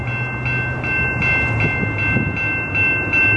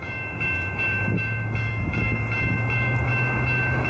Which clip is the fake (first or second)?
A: second